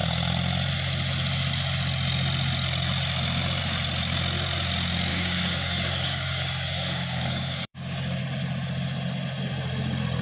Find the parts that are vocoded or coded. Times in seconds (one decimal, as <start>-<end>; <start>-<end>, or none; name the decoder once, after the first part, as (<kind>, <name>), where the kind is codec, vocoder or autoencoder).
5.1-8.2 (codec, DAC)